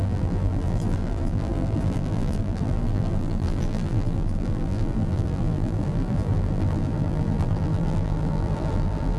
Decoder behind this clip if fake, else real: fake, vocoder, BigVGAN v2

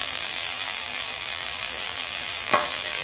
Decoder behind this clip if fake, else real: fake, vocoder, BigVGAN v2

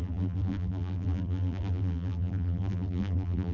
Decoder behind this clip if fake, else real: fake, vocoder, BigVGAN v2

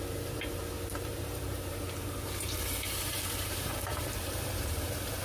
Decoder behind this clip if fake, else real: fake, vocoder, BigVGAN v2